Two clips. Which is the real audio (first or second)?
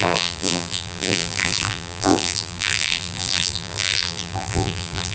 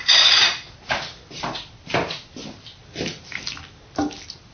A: second